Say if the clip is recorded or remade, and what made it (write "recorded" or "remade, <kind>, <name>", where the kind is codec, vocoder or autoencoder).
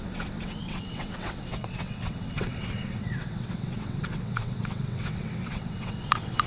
remade, vocoder, WaveNeXt